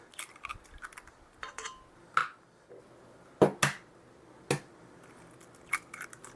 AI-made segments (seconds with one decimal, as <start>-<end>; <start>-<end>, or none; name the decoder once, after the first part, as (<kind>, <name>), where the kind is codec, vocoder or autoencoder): none